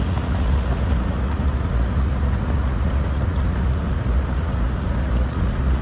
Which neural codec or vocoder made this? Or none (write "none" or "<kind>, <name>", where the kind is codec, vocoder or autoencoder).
vocoder, Vocos